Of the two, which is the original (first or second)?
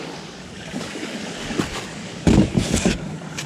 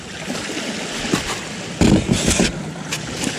second